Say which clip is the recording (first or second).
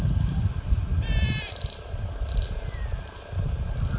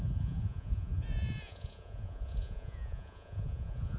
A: first